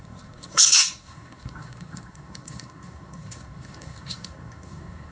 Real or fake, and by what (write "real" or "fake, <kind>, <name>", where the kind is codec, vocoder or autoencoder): fake, codec, SNAC